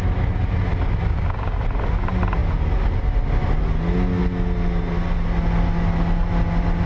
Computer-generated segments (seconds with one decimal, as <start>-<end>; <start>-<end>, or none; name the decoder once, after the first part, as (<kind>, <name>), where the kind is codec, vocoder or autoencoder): 1.1-1.6 (codec, DAC)